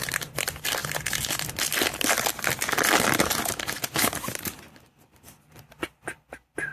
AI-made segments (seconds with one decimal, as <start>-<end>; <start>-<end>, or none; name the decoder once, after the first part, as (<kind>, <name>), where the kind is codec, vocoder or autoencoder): none